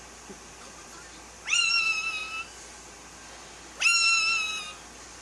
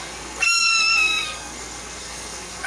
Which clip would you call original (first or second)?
first